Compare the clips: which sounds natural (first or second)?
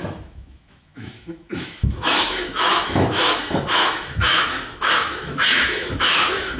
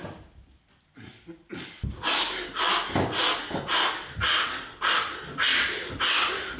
second